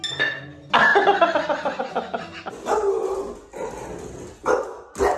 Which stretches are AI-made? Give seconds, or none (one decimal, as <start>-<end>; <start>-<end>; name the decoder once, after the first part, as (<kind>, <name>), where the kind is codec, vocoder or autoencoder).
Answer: none